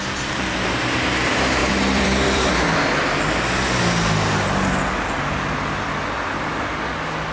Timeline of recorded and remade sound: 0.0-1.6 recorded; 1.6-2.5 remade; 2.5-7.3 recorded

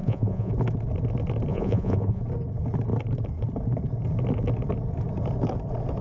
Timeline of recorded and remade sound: 0.0-0.5 remade; 0.5-1.5 recorded; 1.5-2.2 remade; 2.2-6.0 recorded

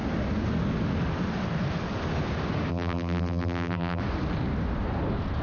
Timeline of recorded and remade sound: 0.0-2.7 recorded; 2.7-4.0 remade; 4.0-5.4 recorded

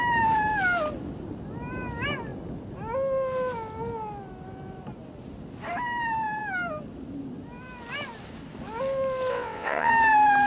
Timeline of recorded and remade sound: 0.0-9.3 recorded; 9.3-9.9 remade; 9.9-10.5 recorded

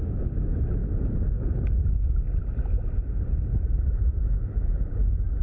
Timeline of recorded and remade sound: 0.0-0.8 remade; 0.8-4.0 recorded; 4.0-5.4 remade